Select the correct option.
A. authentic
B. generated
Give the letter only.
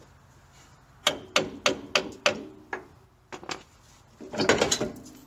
A